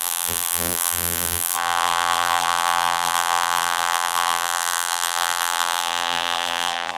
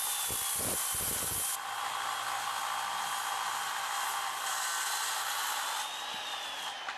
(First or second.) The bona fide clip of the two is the second